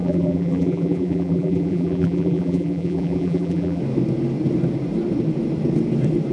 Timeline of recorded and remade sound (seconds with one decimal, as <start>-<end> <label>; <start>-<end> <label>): 0.0-3.8 remade; 3.8-6.3 recorded

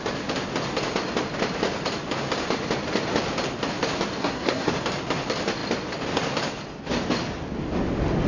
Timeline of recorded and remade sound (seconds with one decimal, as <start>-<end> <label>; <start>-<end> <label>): 0.0-4.2 recorded; 4.2-4.7 remade; 4.7-8.3 recorded

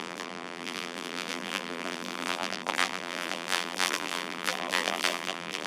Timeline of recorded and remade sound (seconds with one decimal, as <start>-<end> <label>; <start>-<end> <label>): 0.0-5.7 remade